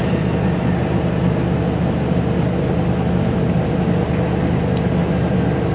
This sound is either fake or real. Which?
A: real